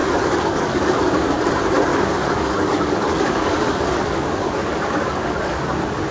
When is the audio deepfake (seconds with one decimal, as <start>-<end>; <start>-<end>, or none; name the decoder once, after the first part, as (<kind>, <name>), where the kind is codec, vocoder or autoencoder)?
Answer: 0.0-1.5 (codec, DAC); 1.9-5.6

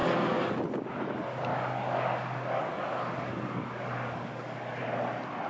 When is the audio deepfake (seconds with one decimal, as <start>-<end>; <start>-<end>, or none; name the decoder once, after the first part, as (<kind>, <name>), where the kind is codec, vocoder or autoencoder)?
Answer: 1.5-4.8 (codec, DAC)

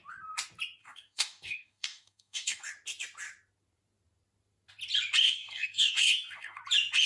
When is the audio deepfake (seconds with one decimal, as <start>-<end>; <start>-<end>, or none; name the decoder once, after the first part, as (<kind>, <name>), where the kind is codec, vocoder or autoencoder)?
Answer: 0.8-2.7 (codec, DAC); 5.2-6.6

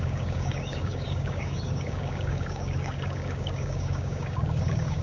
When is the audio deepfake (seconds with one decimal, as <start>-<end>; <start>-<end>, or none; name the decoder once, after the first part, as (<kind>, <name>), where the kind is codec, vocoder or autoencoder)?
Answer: 0.0-5.0 (codec, DAC)

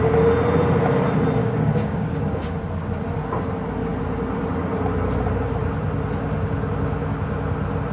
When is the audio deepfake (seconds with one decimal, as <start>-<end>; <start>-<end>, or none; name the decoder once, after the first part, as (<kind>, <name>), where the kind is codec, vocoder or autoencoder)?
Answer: 1.4-2.6 (codec, DAC)

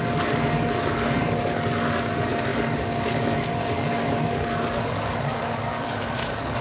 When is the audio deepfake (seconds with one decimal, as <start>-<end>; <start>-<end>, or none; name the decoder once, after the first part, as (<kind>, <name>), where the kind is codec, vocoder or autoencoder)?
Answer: 0.0-6.6 (codec, DAC)

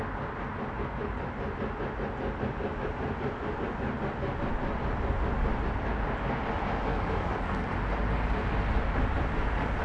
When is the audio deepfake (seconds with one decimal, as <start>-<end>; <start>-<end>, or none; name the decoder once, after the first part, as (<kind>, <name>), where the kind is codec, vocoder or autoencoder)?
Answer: 6.9-7.7 (codec, DAC)